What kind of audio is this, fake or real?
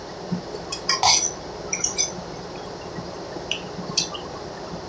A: real